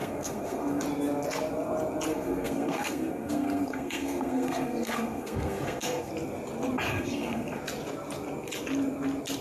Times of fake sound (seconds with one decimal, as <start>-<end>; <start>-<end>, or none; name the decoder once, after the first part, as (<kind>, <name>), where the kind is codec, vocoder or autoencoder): 0.0-0.8 (codec, SNAC); 2.1-6.1; 6.9-7.6